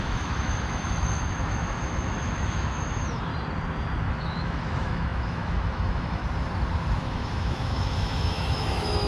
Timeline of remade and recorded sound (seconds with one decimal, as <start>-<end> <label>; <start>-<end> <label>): 0.0-3.3 remade; 3.3-4.0 recorded; 4.0-6.2 remade; 6.2-7.0 recorded; 7.0-9.1 remade